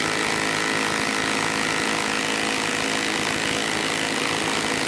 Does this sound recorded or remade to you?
recorded